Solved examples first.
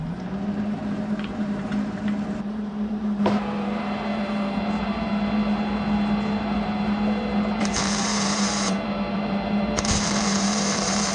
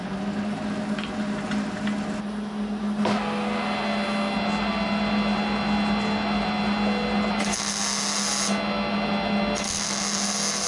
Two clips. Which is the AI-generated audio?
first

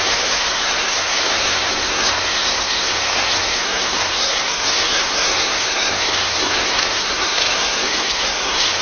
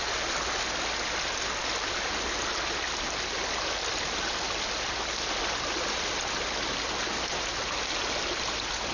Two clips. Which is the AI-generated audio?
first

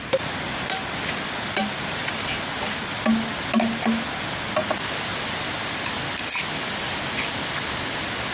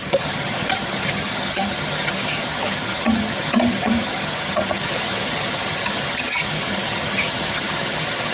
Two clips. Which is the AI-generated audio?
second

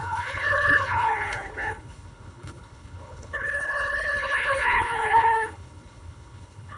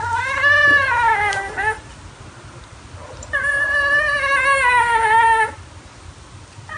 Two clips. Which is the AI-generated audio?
first